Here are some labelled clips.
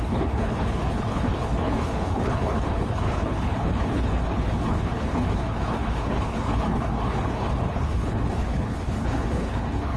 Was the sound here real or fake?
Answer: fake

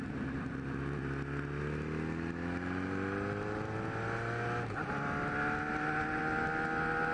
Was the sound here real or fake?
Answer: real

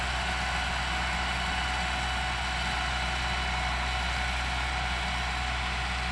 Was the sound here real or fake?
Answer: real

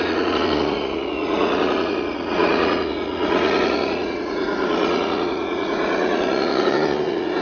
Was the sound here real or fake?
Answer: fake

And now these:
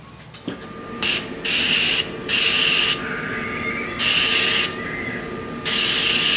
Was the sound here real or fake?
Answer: real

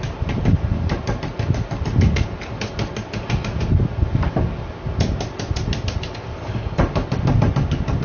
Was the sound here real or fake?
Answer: real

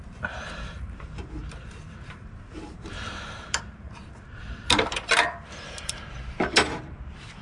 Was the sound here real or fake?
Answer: fake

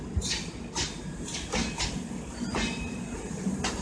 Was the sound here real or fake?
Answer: real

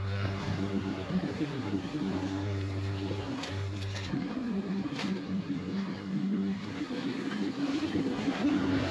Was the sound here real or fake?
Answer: fake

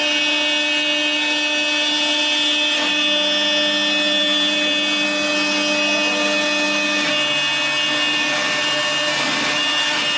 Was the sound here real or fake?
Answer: real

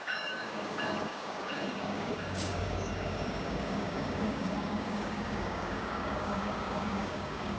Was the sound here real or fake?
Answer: fake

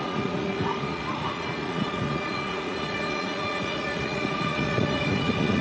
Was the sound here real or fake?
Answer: fake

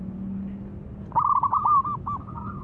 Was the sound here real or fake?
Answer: real